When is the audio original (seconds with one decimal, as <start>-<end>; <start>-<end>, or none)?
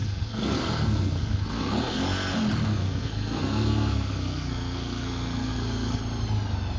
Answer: 2.0-2.8; 6.0-6.8